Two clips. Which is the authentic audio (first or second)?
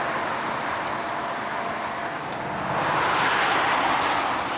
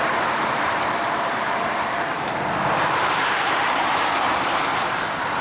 first